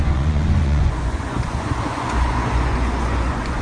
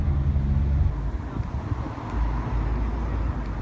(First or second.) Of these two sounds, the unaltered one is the second